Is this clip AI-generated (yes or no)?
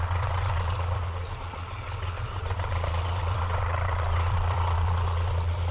yes